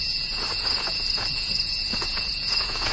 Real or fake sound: fake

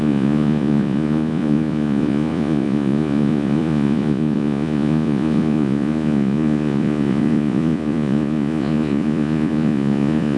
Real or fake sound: fake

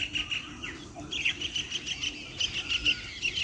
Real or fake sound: real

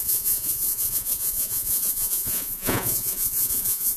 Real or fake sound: fake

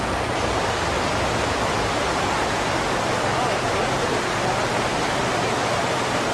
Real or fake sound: real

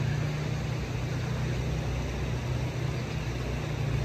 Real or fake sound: real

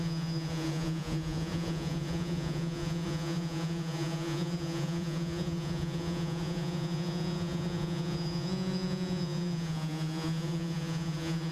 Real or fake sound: fake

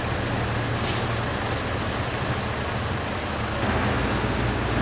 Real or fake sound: real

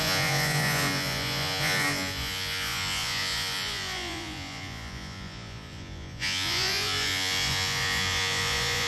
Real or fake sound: fake